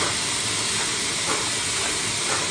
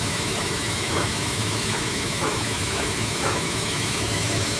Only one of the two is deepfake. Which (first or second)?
second